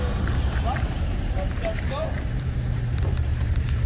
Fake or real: fake